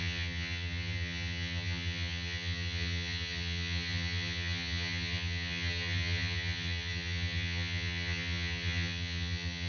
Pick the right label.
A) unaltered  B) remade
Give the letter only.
B